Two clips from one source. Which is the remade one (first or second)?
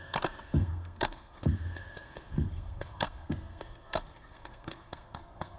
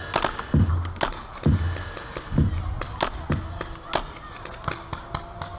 first